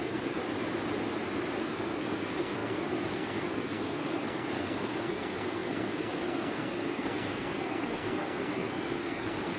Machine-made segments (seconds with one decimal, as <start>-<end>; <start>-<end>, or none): 0.0-0.4; 1.6-9.6